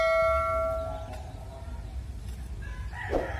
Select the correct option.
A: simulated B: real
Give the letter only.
B